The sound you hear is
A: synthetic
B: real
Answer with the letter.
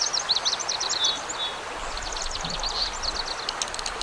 B